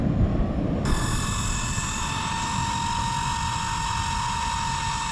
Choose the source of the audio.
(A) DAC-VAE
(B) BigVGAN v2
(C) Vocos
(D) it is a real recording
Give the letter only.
D